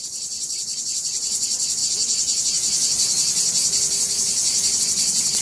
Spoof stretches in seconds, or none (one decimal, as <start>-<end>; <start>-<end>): 0.0-1.8; 4.8-5.4